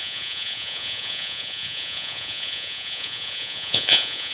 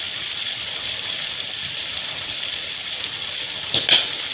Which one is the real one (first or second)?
second